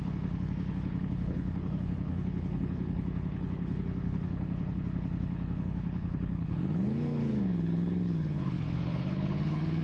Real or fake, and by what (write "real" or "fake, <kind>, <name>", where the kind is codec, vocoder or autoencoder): fake, codec, HILCodec